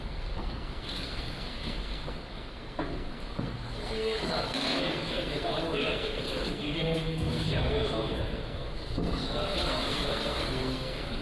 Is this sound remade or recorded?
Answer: remade